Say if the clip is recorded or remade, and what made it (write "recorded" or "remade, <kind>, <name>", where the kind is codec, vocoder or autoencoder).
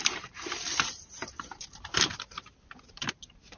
remade, vocoder, BigVGAN v2